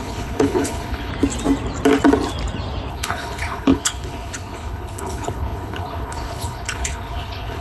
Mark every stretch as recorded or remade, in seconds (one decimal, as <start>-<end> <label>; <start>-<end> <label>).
0.0-1.1 remade; 1.1-2.9 recorded; 2.9-7.6 remade